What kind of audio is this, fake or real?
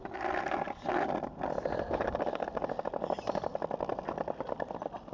real